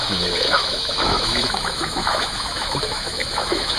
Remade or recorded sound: remade